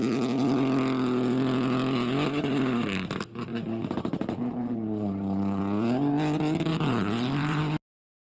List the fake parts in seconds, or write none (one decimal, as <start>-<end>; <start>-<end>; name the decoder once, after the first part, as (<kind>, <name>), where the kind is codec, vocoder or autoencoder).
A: 3.5-5.6 (vocoder, BigVGAN v2); 6.7-7.6